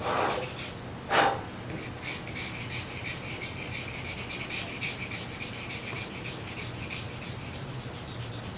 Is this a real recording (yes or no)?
yes